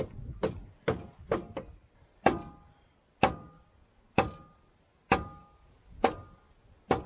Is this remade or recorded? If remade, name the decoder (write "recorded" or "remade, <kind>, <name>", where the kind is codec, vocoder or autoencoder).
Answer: recorded